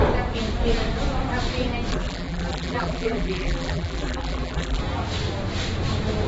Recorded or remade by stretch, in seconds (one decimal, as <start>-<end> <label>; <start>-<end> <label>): 0.0-1.9 recorded; 1.9-4.8 remade; 4.8-6.3 recorded